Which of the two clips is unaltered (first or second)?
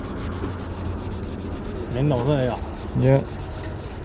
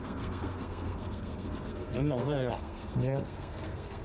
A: first